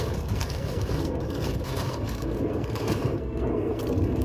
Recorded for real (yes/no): no